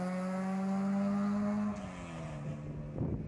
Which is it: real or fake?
real